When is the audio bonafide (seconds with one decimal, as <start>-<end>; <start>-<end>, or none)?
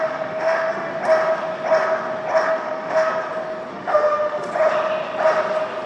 0.9-2.5; 3.1-3.7; 4.5-5.9